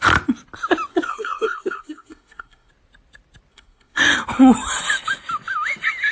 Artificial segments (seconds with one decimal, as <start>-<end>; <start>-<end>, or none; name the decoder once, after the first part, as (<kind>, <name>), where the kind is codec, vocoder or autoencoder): 0.9-2.7 (codec, SNAC); 3.5-4.0